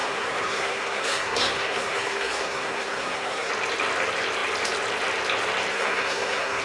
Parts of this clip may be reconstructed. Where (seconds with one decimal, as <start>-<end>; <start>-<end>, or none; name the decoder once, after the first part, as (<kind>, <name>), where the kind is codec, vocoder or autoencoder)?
0.0-3.5 (codec, SNAC); 5.7-6.6